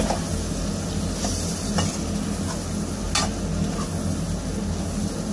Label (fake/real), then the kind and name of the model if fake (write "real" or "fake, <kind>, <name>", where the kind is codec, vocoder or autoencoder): real